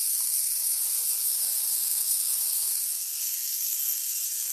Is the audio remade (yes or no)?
yes